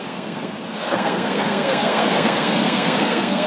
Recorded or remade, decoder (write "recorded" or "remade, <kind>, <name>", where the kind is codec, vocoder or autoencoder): remade, codec, SNAC